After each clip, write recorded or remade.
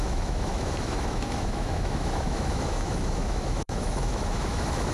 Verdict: remade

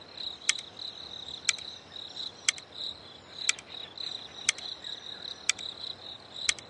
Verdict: remade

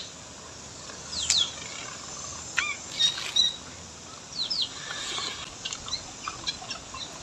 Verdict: recorded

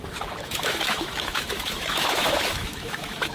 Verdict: remade